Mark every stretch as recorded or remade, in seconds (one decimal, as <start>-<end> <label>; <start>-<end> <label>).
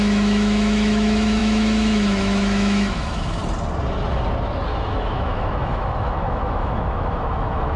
0.0-3.4 remade; 3.4-4.7 recorded; 4.7-7.8 remade